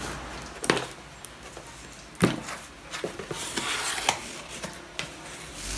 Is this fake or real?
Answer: real